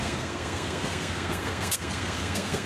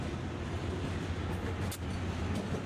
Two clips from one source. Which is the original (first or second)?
second